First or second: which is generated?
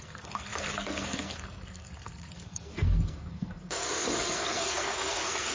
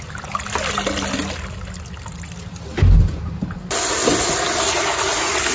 first